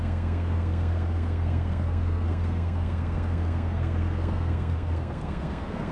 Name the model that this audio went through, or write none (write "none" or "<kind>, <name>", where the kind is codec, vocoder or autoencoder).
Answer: codec, SNAC